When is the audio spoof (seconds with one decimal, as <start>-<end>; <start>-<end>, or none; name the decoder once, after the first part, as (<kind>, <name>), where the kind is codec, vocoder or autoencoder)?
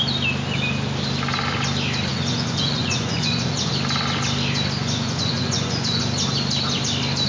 2.1-3.7 (vocoder, Vocos); 4.8-6.0